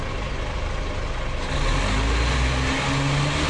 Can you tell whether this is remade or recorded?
recorded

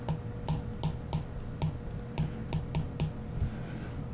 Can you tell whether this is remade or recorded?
recorded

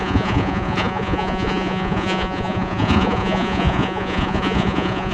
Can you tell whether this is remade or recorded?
remade